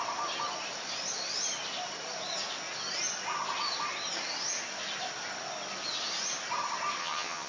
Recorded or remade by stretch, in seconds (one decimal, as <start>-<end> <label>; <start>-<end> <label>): 0.0-7.0 recorded; 7.0-7.5 remade